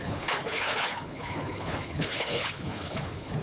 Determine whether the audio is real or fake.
fake